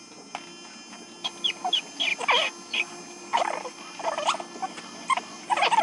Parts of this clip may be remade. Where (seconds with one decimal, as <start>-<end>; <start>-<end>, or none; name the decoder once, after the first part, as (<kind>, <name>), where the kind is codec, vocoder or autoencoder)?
none